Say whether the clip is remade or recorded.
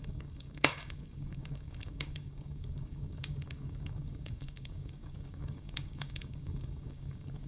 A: remade